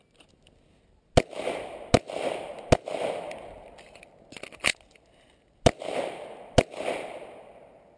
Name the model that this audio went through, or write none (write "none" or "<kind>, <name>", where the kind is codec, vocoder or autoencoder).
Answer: none